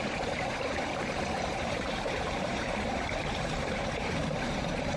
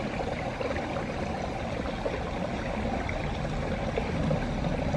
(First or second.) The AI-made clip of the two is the first